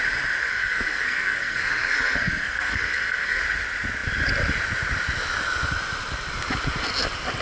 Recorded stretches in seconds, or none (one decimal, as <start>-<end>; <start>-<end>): 0.0-0.4; 3.4-7.4